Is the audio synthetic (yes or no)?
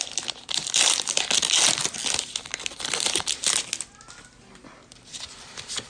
no